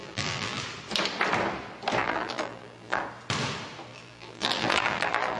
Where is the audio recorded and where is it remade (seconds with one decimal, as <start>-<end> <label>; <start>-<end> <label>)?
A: 0.0-0.6 remade; 0.6-2.0 recorded; 2.0-3.0 remade; 3.0-3.9 recorded; 3.9-5.4 remade